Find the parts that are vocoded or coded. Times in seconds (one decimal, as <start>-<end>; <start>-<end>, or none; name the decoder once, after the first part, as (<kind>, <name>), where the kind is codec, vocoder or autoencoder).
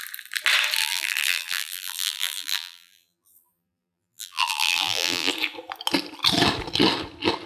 0.8-5.3 (vocoder, BigVGAN v2)